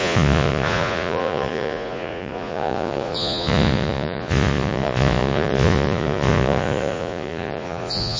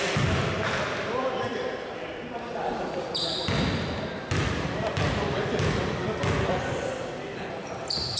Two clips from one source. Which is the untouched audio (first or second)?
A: second